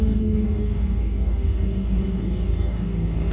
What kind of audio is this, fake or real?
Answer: fake